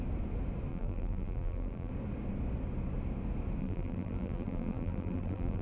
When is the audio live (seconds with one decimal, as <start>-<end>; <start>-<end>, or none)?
0.0-0.7; 1.9-3.6